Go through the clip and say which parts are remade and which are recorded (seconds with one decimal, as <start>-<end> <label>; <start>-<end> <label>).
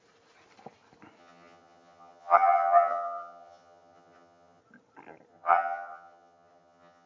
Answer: 0.0-1.2 recorded; 1.2-4.6 remade; 4.6-5.3 recorded; 5.3-7.1 remade